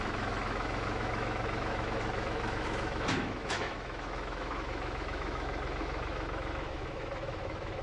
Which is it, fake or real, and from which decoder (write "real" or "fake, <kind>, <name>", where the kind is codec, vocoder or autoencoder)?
fake, autoencoder, DAC-VAE